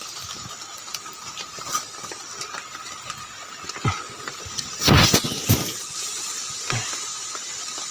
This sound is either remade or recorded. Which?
recorded